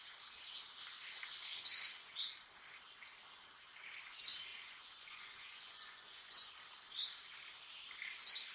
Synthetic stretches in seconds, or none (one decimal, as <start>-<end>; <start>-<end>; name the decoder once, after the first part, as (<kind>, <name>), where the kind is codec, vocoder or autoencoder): 1.5-2.1 (vocoder, Vocos); 4.5-6.5